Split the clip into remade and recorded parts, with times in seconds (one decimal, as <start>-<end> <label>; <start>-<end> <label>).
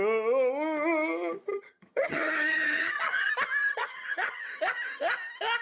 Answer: 0.0-1.5 recorded; 1.5-3.3 remade; 3.3-3.7 recorded; 3.7-4.6 remade; 4.6-5.6 recorded